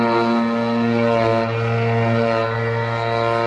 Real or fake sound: real